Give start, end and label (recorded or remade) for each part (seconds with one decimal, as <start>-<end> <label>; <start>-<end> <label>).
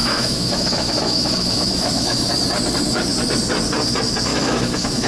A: 0.0-2.3 remade; 2.3-4.3 recorded; 4.3-5.1 remade